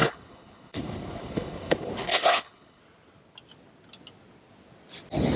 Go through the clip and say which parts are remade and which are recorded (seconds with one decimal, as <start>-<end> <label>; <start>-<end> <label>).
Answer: 0.0-2.8 remade; 2.8-5.4 recorded